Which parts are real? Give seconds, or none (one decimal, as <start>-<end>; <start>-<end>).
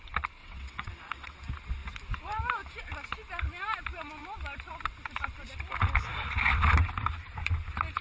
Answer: 0.0-0.4; 1.4-8.0